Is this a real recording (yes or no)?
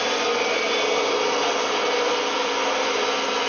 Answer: yes